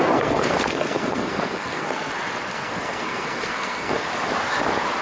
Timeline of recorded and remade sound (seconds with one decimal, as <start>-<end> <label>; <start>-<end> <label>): 0.0-2.1 remade; 2.1-2.5 recorded; 2.5-4.0 remade; 4.0-5.0 recorded